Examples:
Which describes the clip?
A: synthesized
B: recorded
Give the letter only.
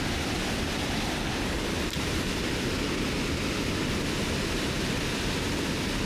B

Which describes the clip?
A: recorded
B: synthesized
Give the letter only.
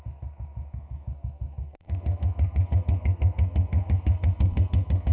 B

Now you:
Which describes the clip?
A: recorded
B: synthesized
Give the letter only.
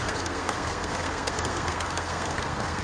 B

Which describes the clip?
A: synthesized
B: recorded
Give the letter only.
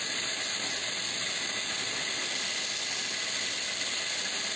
B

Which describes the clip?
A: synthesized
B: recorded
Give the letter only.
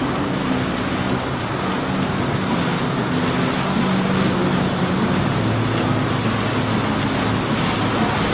B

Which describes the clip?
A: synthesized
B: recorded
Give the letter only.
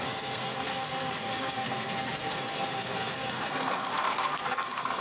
A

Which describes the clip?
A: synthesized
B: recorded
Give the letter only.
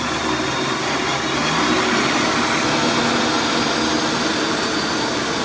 B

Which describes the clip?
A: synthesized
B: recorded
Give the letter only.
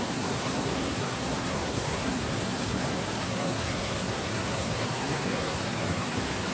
A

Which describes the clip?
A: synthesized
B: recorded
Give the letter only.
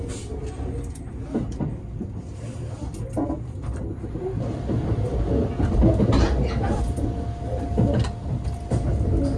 B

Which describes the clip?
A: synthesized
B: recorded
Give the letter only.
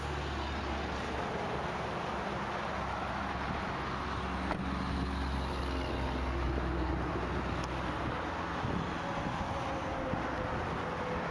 B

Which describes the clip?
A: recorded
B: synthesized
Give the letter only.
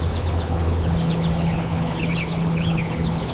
B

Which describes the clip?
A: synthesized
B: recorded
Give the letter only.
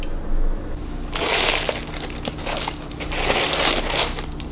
B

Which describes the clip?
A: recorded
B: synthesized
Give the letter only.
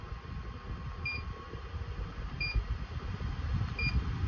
A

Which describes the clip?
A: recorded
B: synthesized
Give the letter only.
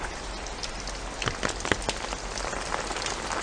A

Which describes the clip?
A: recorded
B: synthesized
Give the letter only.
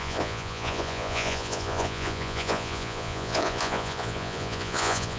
B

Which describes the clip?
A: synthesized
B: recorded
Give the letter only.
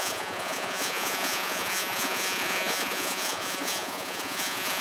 A